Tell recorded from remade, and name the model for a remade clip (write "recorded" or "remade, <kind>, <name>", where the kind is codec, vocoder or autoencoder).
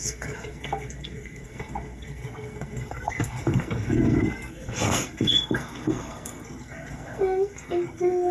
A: remade, codec, SNAC